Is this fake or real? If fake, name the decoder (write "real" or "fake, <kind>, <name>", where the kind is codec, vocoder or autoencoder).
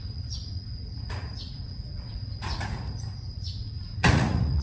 fake, vocoder, Vocos